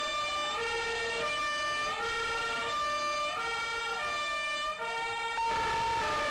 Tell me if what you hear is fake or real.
real